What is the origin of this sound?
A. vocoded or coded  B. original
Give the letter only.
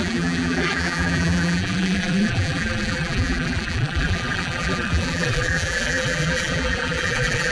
A